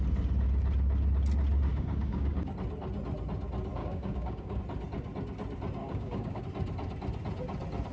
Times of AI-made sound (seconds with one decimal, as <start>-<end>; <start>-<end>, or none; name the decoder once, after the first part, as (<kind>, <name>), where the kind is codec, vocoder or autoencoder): 1.7-2.5 (codec, DAC); 3.8-4.6; 5.8-6.4